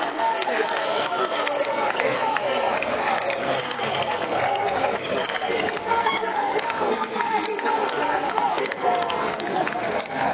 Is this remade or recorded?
remade